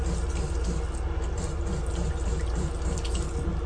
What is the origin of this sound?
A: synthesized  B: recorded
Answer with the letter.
B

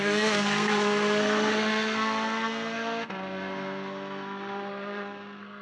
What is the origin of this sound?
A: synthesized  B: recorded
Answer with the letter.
A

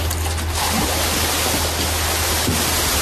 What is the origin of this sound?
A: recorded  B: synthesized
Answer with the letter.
A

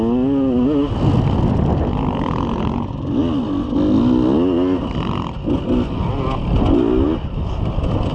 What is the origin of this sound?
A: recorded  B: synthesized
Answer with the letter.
A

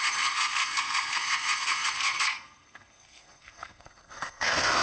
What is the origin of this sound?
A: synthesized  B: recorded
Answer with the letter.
A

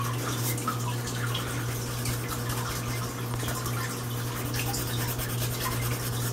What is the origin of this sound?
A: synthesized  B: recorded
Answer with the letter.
B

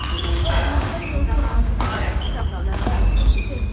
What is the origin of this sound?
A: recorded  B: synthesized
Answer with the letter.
B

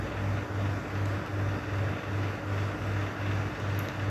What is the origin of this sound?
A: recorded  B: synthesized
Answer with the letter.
A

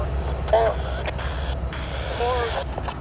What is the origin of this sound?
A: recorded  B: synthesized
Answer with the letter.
A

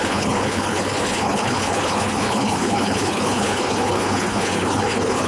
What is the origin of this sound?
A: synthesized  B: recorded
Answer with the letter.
A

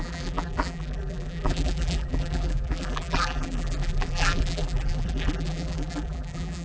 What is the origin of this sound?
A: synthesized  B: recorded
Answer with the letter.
A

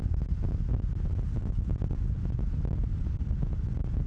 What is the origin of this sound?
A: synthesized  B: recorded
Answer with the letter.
B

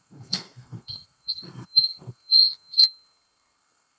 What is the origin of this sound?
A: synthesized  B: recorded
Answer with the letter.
A